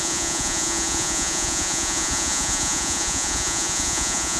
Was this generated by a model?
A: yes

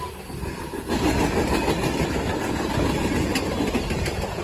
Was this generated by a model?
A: no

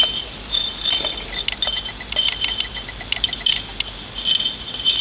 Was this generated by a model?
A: no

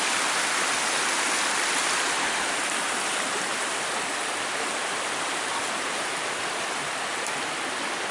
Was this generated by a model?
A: no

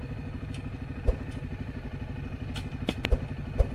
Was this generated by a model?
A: no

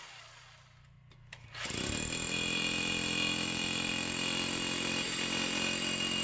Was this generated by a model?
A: yes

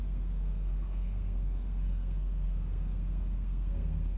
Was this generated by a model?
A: yes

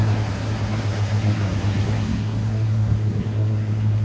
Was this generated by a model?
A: yes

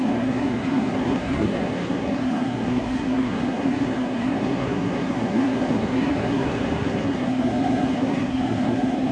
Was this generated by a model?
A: yes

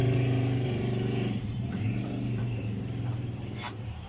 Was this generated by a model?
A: yes